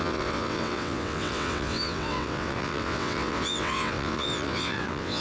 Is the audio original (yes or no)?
no